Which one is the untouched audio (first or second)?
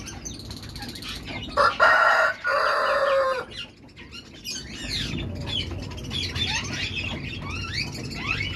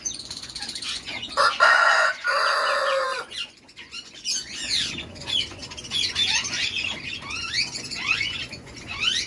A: first